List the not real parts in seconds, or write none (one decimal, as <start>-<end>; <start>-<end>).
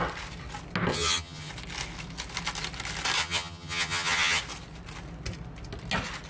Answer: 0.9-1.5; 3.2-4.4